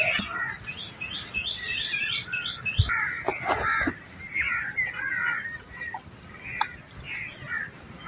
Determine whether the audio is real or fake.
real